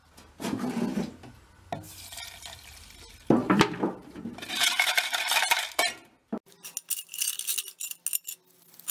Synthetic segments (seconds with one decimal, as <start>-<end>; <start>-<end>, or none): 0.0-0.7; 4.0-5.8